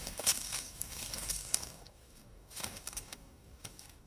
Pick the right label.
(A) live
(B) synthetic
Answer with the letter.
B